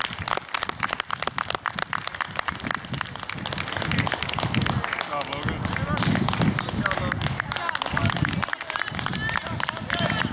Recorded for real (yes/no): yes